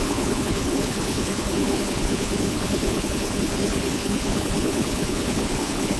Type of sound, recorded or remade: remade